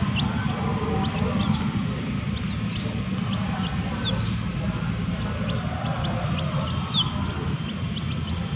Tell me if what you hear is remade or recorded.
recorded